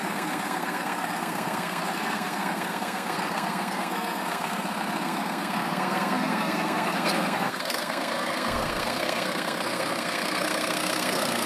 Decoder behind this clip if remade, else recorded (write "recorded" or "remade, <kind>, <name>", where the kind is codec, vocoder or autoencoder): remade, codec, SNAC